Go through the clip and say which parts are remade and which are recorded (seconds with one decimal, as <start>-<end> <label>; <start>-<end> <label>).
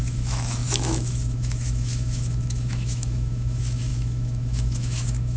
0.0-5.4 remade